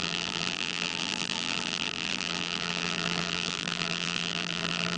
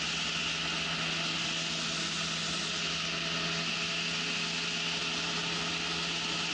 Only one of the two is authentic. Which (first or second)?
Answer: second